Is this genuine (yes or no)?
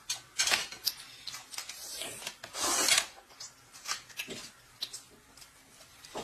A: yes